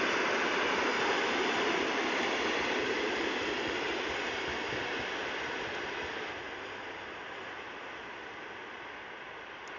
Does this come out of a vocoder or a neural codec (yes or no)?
yes